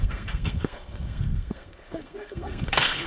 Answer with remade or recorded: remade